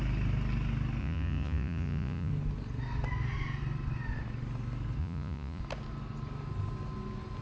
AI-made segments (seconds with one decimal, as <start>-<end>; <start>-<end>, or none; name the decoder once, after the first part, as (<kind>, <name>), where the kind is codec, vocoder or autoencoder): 1.0-2.3 (vocoder, Vocos); 5.0-5.6